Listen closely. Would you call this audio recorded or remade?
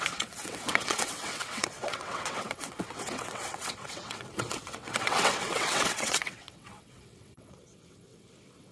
remade